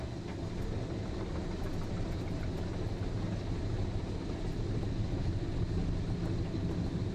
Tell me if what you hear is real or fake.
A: real